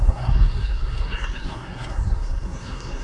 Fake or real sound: fake